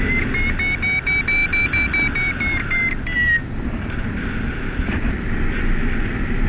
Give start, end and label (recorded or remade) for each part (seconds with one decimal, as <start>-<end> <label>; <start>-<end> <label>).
0.0-6.5 recorded